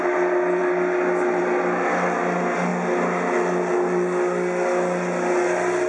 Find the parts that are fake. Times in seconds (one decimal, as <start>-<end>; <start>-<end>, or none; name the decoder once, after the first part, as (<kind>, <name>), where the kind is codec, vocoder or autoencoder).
none